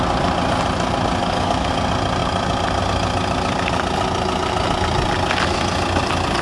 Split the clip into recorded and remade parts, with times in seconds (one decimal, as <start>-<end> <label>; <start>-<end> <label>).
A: 0.0-1.2 recorded; 1.2-1.7 remade; 1.7-6.4 recorded